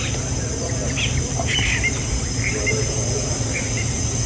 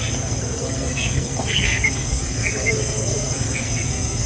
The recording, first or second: first